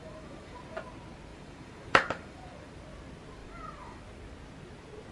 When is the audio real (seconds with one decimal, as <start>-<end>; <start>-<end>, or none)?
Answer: 0.6-1.3; 2.7-3.4; 4.0-5.1